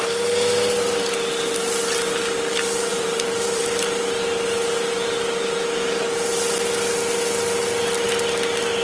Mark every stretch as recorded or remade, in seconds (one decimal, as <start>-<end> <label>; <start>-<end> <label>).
0.0-2.9 recorded; 2.9-3.6 remade; 3.6-8.8 recorded